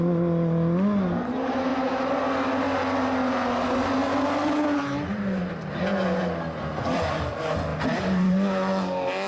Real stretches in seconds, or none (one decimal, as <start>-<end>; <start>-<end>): 0.0-4.0; 4.8-7.7; 8.5-9.3